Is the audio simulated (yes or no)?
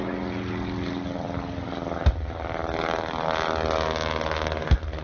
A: no